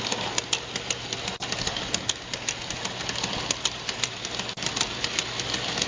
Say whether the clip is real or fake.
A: real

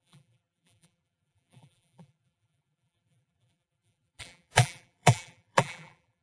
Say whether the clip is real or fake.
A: fake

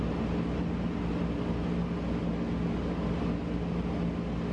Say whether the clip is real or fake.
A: real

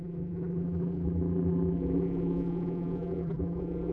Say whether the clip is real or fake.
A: fake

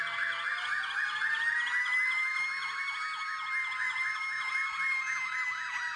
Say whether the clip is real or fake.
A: real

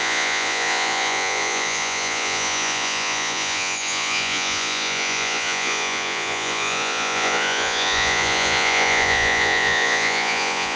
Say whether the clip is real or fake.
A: fake